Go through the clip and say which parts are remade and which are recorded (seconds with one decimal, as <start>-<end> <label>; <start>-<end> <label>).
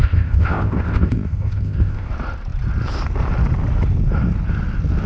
0.0-2.1 remade; 2.1-5.1 recorded